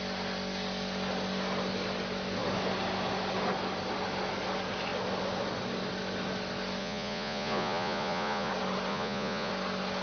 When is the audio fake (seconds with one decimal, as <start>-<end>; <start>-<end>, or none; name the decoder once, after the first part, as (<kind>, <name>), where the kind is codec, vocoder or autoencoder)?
6.8-8.5 (vocoder, Vocos); 8.9-9.5